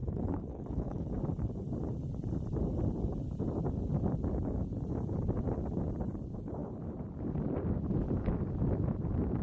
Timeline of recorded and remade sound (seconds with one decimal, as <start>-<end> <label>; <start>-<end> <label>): 0.0-1.1 remade; 1.1-9.4 recorded